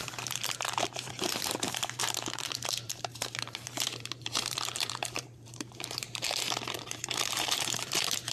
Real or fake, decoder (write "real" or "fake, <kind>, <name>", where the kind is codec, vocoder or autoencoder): fake, vocoder, BigVGAN v2